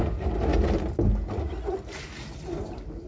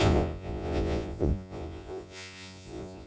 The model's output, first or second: second